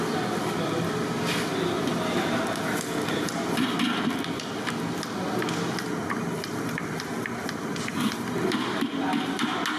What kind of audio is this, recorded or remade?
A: recorded